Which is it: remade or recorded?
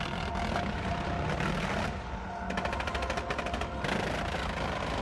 recorded